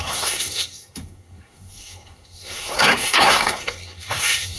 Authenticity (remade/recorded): remade